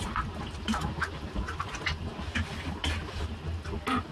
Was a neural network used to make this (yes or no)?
no